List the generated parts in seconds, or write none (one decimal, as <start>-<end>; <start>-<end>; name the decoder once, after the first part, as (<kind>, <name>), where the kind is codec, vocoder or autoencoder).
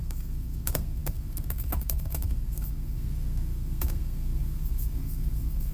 0.0-5.7 (codec, SNAC)